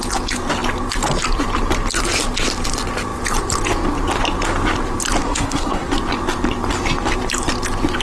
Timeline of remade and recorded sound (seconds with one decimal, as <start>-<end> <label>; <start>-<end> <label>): 0.0-5.2 recorded; 5.2-5.9 remade; 5.9-8.0 recorded